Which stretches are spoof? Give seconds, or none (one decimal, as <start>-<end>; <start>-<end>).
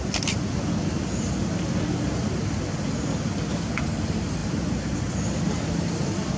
none